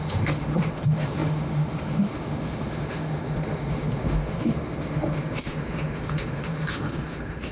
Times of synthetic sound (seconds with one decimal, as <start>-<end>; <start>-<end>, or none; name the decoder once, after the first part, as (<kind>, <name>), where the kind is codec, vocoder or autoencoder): 0.0-7.5 (autoencoder, DAC-VAE)